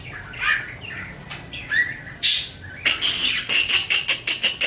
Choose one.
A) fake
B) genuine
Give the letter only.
B